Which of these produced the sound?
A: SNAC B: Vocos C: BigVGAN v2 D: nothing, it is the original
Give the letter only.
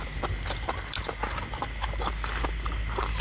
D